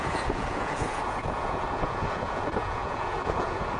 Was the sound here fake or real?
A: fake